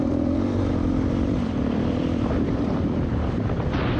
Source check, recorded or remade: remade